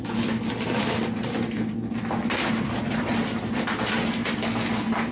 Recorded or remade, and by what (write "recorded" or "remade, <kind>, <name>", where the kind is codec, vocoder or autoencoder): recorded